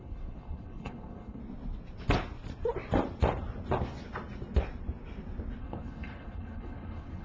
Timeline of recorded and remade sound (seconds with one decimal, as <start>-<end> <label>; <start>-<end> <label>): 0.0-1.4 remade; 1.4-5.6 recorded; 5.6-7.2 remade